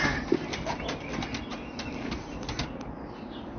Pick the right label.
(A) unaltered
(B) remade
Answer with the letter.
A